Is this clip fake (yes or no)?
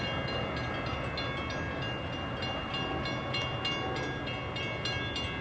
no